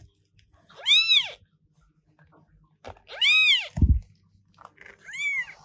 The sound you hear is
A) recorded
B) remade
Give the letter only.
A